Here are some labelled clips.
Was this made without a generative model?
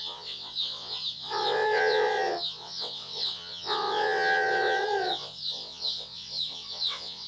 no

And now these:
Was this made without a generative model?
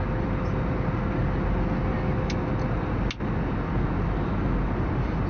yes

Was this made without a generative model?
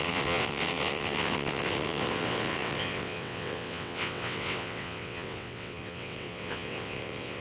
no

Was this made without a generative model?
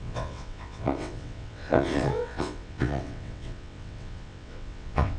no